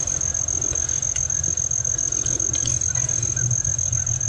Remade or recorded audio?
recorded